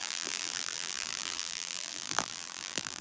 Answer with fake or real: fake